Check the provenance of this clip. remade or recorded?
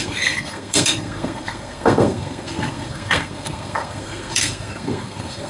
remade